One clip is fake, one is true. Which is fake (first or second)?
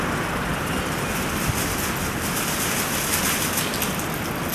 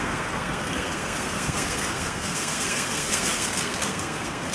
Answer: second